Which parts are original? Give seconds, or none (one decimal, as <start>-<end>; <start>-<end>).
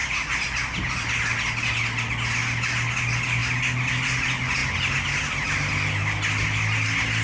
0.0-7.2